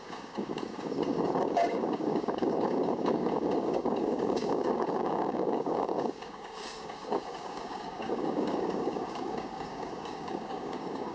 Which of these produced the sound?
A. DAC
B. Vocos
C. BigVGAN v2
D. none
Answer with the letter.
A